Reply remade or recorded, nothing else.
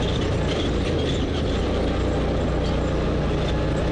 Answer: recorded